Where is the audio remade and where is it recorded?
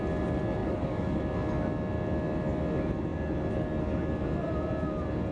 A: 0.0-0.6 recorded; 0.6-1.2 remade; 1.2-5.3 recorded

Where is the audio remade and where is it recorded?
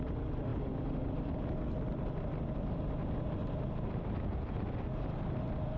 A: 0.0-3.4 recorded; 3.4-5.8 remade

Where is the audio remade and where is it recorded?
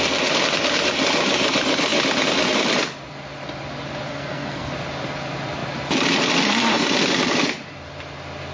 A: 0.0-4.1 recorded; 4.1-4.7 remade; 4.7-8.5 recorded